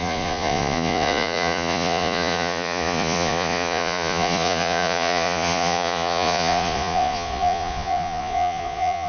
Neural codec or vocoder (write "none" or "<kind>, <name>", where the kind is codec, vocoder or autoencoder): vocoder, Vocos